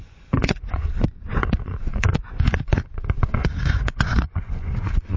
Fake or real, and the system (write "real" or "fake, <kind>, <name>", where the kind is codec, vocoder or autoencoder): fake, vocoder, Vocos